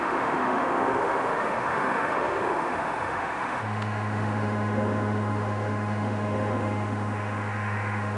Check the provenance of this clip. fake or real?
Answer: fake